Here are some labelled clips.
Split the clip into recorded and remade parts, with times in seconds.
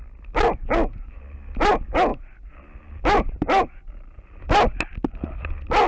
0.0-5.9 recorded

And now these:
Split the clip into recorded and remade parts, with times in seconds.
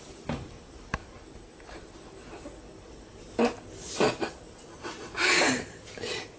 0.0-6.4 recorded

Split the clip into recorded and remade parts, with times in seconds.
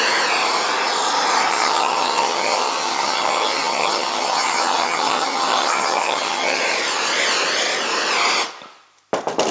0.0-1.5 recorded; 1.5-6.6 remade; 6.6-9.5 recorded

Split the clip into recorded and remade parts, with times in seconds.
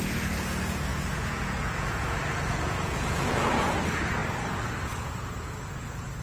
0.0-6.2 remade